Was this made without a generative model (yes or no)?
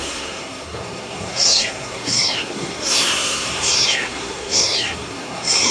no